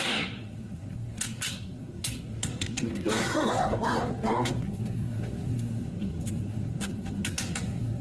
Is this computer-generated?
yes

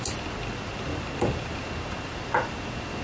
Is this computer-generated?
no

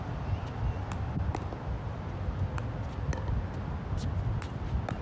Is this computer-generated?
no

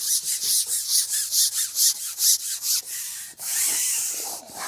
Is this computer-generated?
no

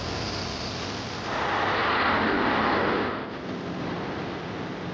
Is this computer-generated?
no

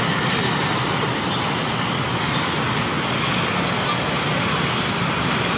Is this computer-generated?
no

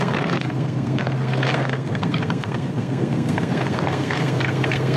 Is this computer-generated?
yes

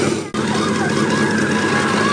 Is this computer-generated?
no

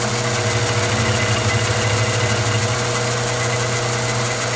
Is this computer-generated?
no